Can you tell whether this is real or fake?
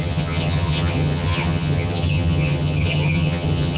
fake